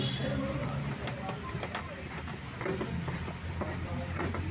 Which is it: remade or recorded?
recorded